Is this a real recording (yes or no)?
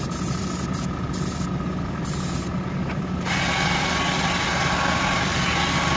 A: yes